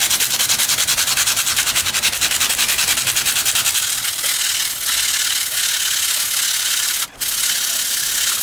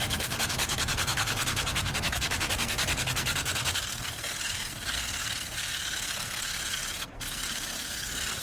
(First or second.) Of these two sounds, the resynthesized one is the second